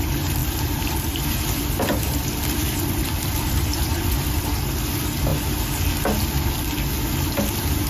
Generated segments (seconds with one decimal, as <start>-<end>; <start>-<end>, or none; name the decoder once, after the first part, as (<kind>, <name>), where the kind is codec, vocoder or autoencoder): 0.0-5.3 (vocoder, BigVGAN v2); 7.3-7.9